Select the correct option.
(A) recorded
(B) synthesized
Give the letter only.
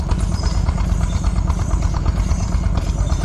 A